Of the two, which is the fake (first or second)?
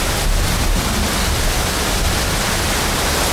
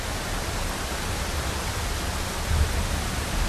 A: first